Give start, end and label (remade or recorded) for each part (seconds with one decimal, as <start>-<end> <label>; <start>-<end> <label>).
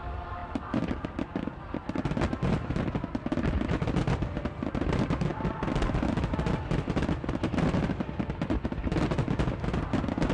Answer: 0.0-10.3 recorded